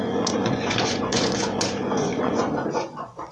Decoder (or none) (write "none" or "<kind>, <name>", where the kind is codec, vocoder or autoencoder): vocoder, Vocos